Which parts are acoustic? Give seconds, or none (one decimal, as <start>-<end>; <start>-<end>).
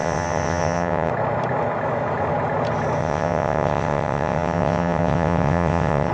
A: 1.1-3.0